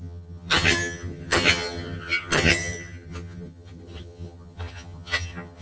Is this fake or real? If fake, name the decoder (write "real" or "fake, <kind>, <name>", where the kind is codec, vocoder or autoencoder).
fake, vocoder, HiFi-GAN